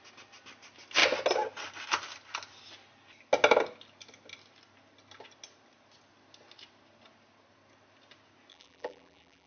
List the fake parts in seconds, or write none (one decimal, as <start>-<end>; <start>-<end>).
8.5-9.5